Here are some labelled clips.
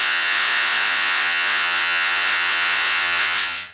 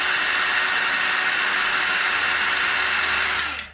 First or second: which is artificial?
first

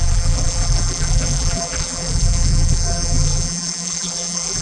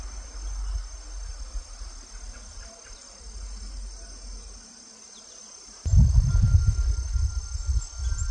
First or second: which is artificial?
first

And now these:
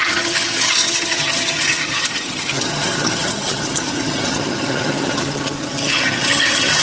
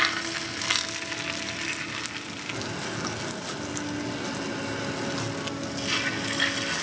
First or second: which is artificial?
first